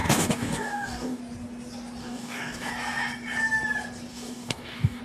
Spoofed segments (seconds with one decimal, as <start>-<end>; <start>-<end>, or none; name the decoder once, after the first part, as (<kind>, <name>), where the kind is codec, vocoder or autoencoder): 0.0-1.2 (codec, DAC); 2.0-2.7; 4.1-5.0